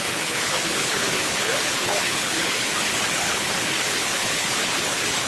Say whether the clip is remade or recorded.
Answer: remade